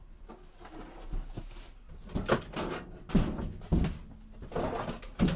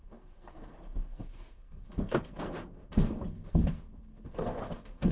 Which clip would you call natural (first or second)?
first